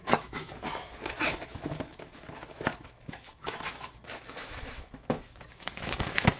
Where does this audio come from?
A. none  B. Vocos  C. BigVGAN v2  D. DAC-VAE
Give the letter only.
D